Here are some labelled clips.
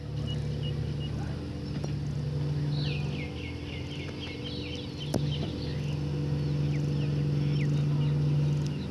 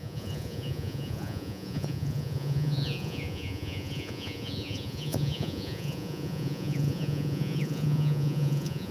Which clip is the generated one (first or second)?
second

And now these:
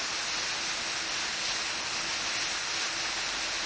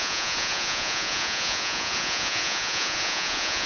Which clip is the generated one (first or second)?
second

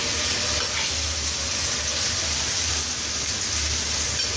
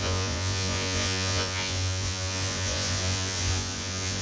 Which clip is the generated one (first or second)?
second